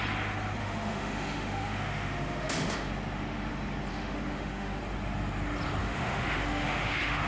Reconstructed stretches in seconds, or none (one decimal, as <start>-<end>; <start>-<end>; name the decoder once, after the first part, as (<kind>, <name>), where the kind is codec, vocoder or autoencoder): 0.6-2.9 (autoencoder, DAC-VAE); 3.9-4.8; 5.8-7.3